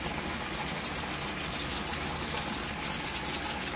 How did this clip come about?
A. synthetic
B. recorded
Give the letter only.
B